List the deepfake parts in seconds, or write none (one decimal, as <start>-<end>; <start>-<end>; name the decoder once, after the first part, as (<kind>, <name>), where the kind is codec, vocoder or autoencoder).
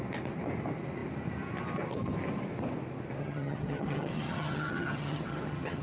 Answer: 3.2-5.8 (vocoder, HiFi-GAN)